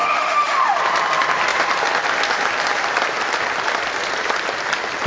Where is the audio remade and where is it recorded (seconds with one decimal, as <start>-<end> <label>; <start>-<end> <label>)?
0.0-0.8 remade; 0.8-5.1 recorded